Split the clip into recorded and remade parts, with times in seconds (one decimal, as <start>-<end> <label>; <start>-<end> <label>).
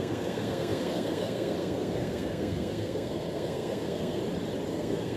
0.0-4.2 remade; 4.2-4.7 recorded; 4.7-5.2 remade